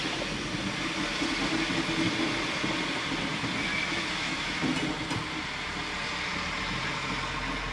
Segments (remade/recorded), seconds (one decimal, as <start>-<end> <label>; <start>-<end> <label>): 0.0-3.9 recorded; 3.9-4.6 remade; 4.6-7.7 recorded